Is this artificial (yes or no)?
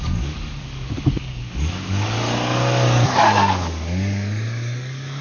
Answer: yes